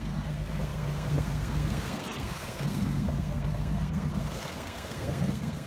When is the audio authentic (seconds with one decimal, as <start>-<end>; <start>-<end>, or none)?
none